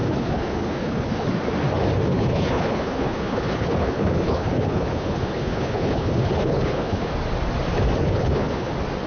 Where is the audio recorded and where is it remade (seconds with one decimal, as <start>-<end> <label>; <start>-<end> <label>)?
0.0-1.3 remade; 1.3-2.1 recorded; 2.1-7.1 remade; 7.1-8.0 recorded; 8.0-8.7 remade; 8.7-9.1 recorded